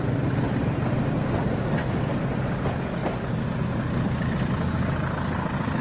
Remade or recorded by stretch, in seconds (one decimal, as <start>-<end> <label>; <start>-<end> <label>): 0.0-5.8 recorded